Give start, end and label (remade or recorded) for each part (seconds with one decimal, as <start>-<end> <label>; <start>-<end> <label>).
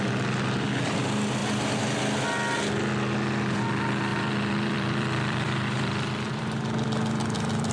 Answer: 0.0-4.1 recorded; 4.1-7.7 remade